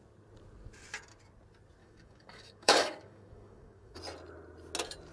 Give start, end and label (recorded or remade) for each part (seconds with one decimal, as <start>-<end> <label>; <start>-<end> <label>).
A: 0.0-1.8 recorded; 1.8-4.0 remade; 4.0-5.1 recorded